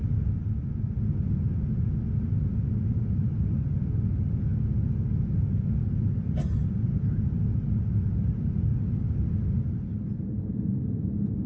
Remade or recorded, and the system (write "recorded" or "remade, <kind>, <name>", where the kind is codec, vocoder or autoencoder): recorded